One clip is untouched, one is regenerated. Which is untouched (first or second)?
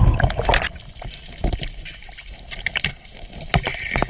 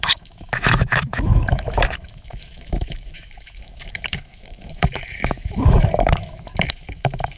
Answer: first